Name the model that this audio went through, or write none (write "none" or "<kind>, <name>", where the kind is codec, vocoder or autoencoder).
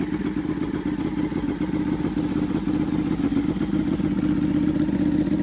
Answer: none